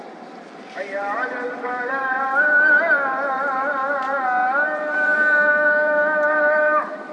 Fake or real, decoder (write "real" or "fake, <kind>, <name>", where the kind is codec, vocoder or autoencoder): fake, vocoder, BigVGAN v2